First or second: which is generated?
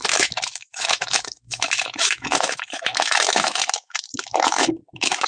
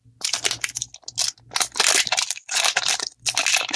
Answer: first